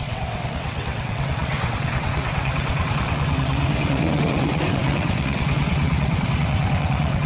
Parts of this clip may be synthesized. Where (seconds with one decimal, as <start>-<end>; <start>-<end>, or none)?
0.0-7.3